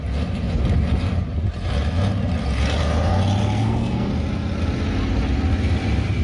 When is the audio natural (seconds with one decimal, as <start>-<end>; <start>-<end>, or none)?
0.0-3.4; 4.1-6.2